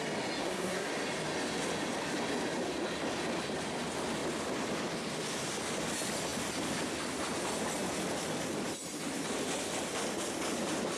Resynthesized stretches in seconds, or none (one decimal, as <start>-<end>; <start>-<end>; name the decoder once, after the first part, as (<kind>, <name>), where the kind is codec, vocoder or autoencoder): 0.4-0.9 (codec, SNAC)